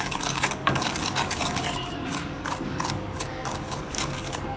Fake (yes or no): yes